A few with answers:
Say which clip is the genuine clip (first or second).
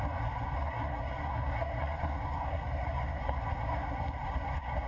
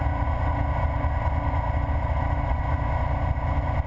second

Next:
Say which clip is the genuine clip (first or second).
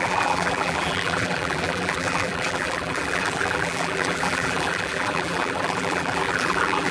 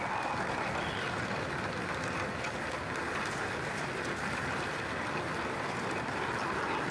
second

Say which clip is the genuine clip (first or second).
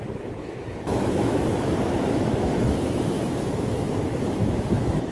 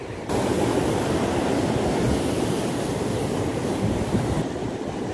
second